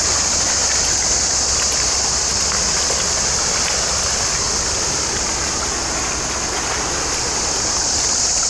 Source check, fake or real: real